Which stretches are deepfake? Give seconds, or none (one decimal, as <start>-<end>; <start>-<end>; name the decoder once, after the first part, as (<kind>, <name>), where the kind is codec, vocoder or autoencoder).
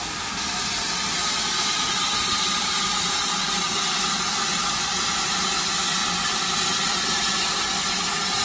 4.9-5.5 (vocoder, BigVGAN v2); 6.0-7.3